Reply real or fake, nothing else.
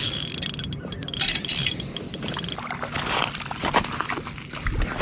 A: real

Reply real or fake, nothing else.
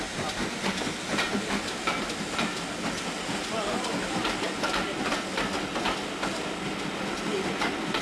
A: real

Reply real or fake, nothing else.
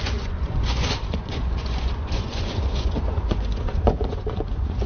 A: fake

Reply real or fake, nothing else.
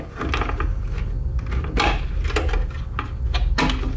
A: real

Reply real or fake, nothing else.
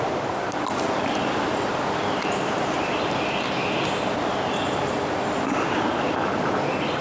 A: real